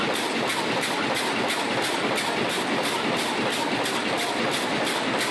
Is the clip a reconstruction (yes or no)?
no